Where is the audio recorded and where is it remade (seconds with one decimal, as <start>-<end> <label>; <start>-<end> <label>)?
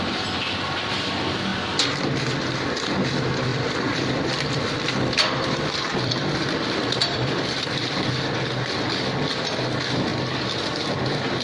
0.0-3.5 recorded; 3.5-8.1 remade; 8.1-10.1 recorded; 10.1-11.0 remade; 11.0-11.4 recorded